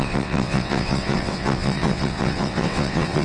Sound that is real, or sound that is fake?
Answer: fake